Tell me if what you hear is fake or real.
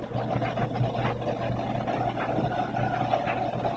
real